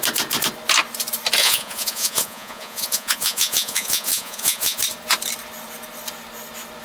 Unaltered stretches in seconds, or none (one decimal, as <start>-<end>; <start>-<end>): 0.0-1.4; 4.8-6.8